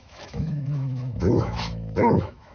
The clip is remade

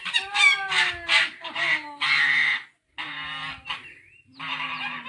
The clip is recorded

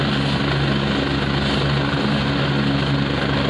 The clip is recorded